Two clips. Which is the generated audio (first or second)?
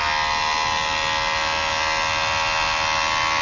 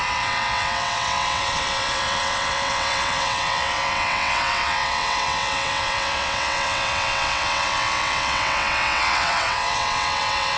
second